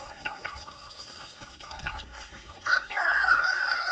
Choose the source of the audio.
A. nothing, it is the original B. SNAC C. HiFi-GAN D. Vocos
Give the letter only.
B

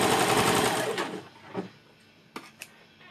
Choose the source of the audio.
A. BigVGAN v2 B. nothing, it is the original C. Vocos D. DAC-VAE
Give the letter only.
B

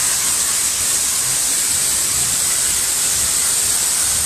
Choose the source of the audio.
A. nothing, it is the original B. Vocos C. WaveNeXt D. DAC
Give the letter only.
A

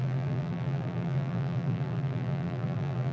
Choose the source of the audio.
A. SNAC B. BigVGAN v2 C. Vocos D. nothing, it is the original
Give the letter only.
B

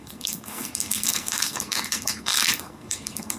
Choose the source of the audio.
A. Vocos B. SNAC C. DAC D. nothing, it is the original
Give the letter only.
B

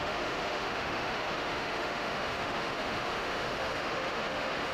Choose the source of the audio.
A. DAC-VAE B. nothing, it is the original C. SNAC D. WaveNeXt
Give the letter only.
A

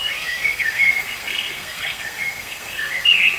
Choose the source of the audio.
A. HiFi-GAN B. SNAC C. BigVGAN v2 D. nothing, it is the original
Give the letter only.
B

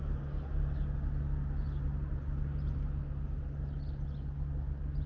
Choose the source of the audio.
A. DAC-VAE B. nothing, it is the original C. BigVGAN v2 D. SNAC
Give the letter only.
B